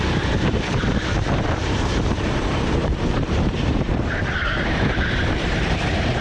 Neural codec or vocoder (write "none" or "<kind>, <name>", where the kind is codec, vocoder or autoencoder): vocoder, BigVGAN v2